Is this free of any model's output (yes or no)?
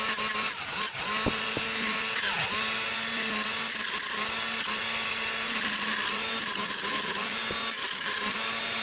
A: yes